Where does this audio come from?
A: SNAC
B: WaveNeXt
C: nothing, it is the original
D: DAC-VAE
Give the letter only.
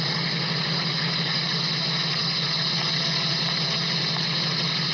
C